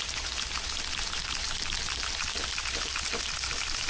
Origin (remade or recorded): recorded